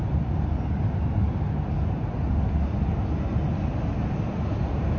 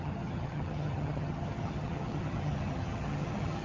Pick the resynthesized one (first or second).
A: second